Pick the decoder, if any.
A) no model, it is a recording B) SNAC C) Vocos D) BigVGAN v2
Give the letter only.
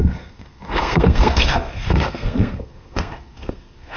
B